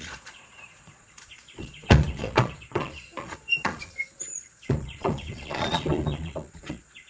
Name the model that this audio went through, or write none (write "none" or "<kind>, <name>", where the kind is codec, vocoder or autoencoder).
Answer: vocoder, Vocos